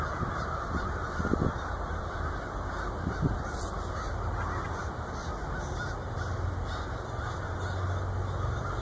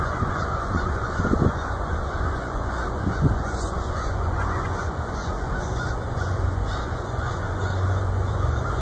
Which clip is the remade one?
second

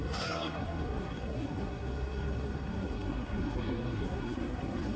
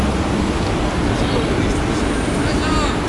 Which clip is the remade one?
first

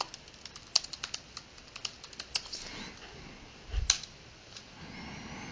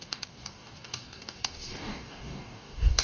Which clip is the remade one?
second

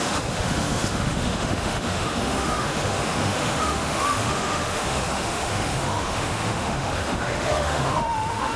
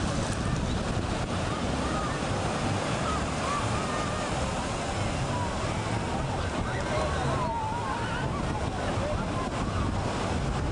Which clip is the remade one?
first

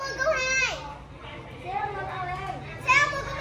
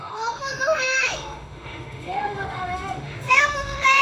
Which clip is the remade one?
second